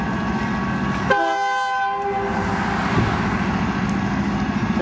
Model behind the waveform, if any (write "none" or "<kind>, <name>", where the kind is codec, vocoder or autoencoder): none